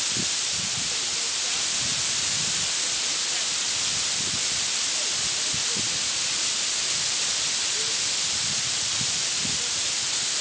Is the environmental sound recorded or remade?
recorded